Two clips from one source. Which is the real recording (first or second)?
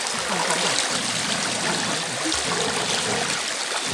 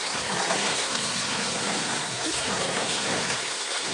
first